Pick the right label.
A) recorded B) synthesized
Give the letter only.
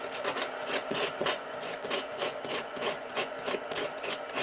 B